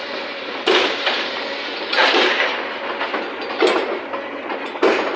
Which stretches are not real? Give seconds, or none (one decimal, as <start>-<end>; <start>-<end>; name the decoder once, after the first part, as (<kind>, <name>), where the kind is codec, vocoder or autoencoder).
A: none